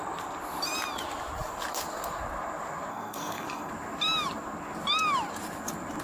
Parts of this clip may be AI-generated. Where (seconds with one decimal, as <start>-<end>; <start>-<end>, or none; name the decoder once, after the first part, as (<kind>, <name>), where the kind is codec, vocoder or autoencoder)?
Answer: 2.9-3.7 (codec, SNAC)